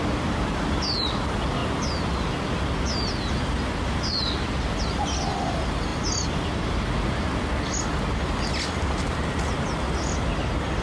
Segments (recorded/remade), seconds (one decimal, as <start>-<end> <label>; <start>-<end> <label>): 0.0-10.8 recorded